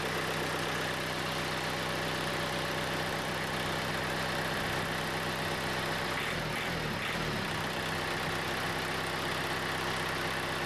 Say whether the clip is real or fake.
real